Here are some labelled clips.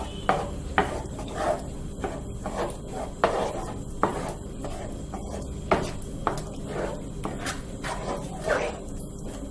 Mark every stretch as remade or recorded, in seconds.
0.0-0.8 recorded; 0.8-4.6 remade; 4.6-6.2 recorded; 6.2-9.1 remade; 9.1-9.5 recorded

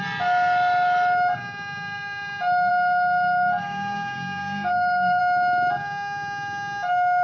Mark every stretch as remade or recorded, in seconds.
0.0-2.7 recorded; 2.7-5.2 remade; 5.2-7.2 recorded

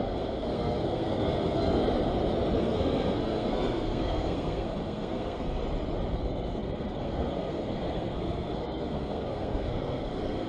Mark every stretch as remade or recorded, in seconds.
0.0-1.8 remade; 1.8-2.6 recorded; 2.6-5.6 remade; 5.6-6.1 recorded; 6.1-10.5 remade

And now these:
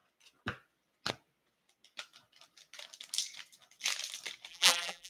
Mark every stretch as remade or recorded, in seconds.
0.0-4.5 recorded; 4.5-5.1 remade

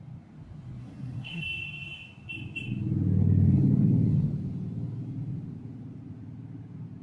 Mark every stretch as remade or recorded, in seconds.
0.0-0.8 recorded; 0.8-1.4 remade; 1.4-7.0 recorded

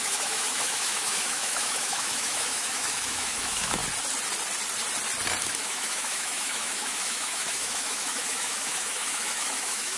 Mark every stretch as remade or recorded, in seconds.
0.0-3.8 remade; 3.8-5.4 recorded; 5.4-10.0 remade

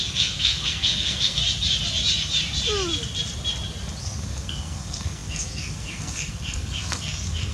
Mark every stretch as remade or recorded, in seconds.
0.0-1.4 remade; 1.4-4.0 recorded; 4.0-7.5 remade

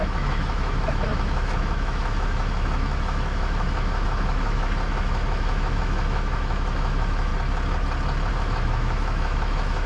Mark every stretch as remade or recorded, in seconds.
0.0-7.3 remade; 7.3-8.3 recorded; 8.3-9.9 remade